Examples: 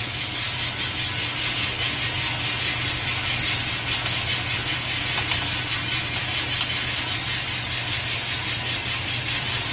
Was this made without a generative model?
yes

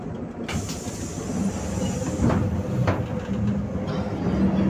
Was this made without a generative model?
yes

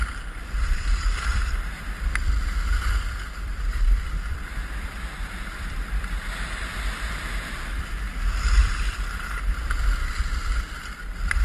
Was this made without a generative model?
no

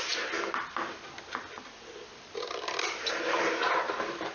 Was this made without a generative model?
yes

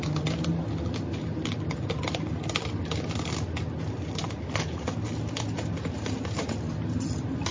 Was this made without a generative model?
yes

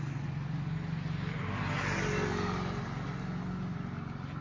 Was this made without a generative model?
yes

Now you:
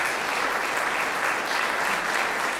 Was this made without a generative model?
yes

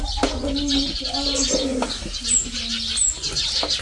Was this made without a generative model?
yes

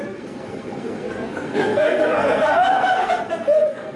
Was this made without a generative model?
no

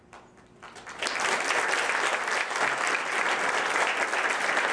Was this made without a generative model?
no